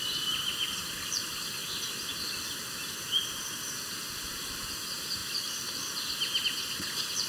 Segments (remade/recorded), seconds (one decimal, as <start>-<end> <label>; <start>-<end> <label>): 0.0-7.3 recorded